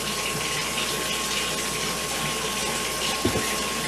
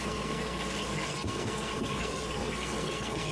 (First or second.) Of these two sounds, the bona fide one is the first